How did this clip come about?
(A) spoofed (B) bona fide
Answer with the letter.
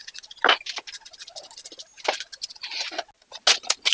B